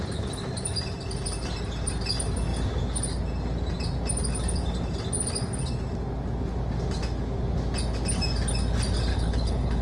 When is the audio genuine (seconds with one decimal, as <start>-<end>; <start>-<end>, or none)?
0.0-9.1